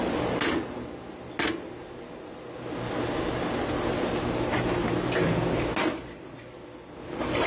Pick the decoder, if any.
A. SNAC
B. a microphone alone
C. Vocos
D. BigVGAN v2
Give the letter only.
B